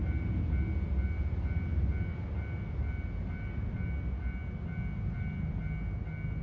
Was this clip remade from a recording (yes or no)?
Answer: no